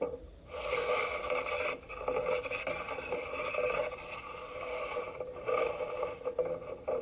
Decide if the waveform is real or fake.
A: real